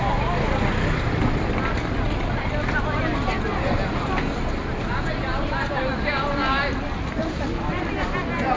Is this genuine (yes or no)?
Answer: yes